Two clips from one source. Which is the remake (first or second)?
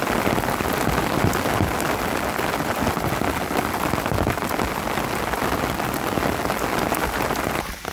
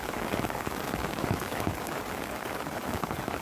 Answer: second